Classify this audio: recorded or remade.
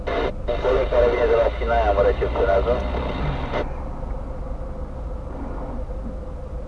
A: recorded